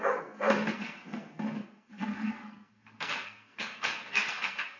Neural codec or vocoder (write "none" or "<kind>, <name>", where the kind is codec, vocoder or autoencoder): codec, SNAC